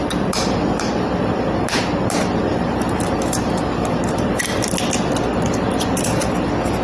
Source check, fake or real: real